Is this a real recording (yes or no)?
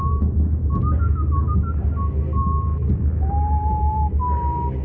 yes